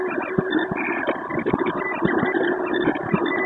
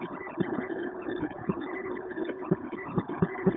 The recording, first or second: first